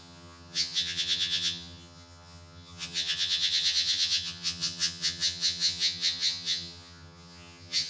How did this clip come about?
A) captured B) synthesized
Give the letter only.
B